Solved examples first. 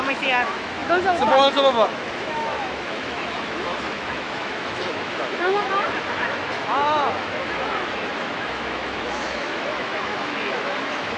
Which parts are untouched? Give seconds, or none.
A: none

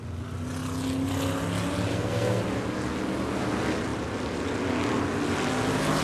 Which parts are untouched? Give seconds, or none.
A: 0.0-1.9; 2.4-6.0

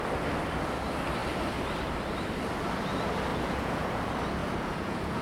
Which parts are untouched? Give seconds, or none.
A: 0.0-3.3; 4.0-4.4

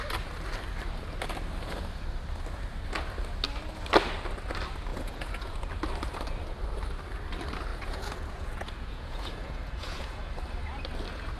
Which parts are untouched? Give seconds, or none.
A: 0.0-4.9; 5.7-7.7; 10.2-11.4

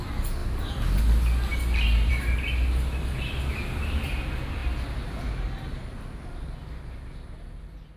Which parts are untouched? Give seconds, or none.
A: 0.0-8.0

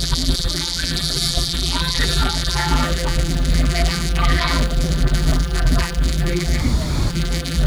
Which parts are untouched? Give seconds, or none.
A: 6.6-7.1